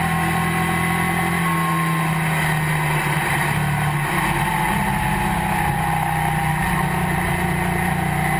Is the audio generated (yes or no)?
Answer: no